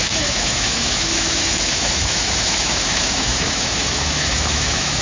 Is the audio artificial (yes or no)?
yes